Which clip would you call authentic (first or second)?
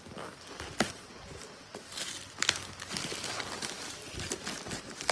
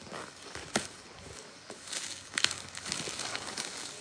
first